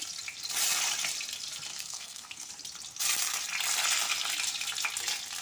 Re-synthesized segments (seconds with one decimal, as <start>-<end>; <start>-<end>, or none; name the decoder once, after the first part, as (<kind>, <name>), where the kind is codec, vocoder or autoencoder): 1.7-2.5 (codec, SNAC)